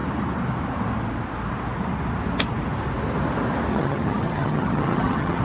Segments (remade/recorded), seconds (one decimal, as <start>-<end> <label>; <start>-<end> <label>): 0.0-3.7 recorded; 3.7-5.4 remade

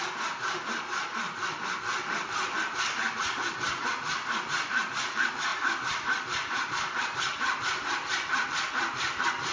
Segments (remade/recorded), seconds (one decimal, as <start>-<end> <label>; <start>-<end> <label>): 0.0-9.5 recorded

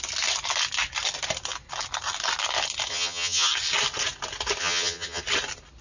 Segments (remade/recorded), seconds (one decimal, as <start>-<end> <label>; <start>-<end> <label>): 0.0-2.9 recorded; 2.9-3.5 remade; 3.5-4.6 recorded; 4.6-5.2 remade; 5.2-5.8 recorded

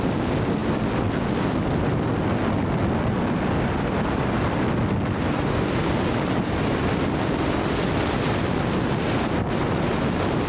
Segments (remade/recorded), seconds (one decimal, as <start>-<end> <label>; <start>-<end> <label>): 0.0-10.5 recorded

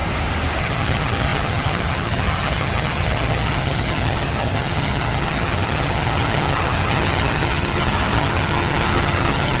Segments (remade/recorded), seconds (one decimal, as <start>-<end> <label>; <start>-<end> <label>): 0.0-0.6 recorded; 0.6-9.6 remade